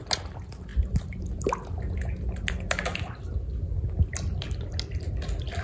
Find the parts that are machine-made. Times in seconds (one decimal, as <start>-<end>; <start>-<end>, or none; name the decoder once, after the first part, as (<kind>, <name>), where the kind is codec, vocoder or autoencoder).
none